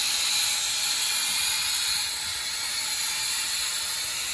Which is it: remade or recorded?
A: recorded